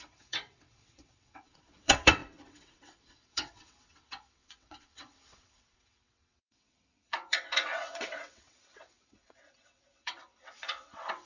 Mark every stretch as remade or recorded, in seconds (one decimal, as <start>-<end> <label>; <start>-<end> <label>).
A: 0.0-11.3 remade